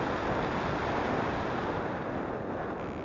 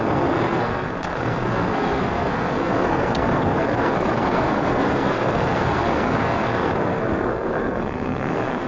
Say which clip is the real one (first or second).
first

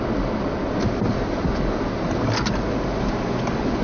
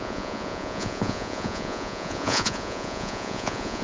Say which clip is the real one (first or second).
first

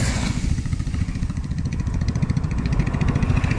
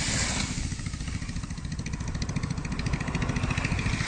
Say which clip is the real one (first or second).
second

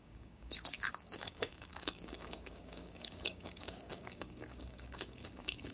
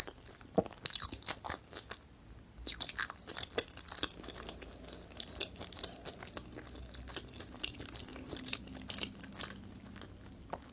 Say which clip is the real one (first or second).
second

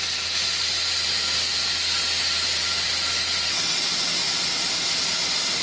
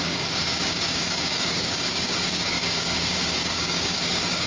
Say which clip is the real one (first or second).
first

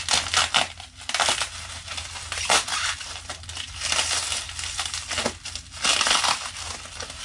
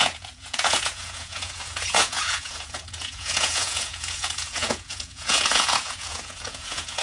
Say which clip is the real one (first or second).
first